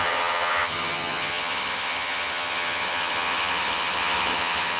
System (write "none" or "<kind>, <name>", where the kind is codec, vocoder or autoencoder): vocoder, HiFi-GAN